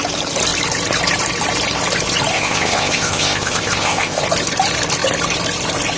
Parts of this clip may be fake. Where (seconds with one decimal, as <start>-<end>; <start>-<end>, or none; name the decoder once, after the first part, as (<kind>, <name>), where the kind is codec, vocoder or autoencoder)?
2.3-4.2 (codec, ZipCodec)